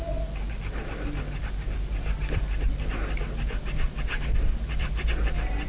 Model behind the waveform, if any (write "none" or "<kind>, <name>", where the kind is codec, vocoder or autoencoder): none